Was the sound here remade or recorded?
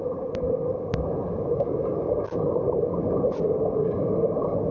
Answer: recorded